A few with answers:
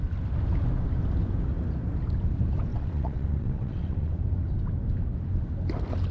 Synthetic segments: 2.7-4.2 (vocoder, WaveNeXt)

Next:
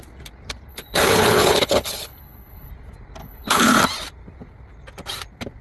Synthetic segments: 0.7-2.7 (codec, HILCodec); 3.2-3.8

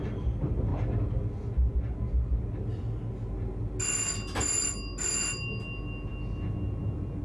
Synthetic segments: none

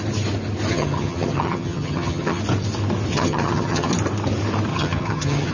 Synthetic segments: 0.7-2.4 (vocoder, HiFi-GAN); 3.1-3.9; 4.7-5.5